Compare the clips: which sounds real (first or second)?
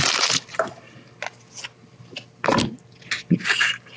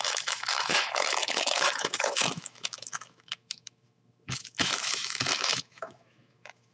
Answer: first